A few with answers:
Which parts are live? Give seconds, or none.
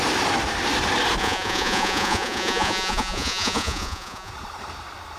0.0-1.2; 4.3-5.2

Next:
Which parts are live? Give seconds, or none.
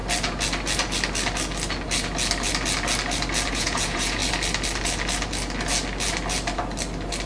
0.0-3.5; 4.2-7.3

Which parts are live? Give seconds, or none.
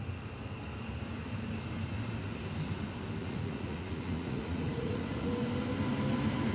0.0-3.2; 5.3-6.5